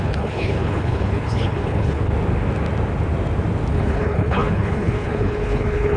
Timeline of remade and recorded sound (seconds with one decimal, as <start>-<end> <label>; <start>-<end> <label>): 0.0-2.1 remade; 2.1-3.7 recorded; 3.7-6.0 remade